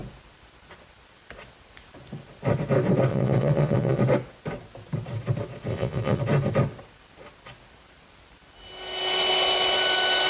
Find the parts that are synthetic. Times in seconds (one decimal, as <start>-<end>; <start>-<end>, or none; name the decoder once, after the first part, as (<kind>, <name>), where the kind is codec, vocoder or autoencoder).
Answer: 3.1-4.0 (vocoder, Vocos); 5.7-6.2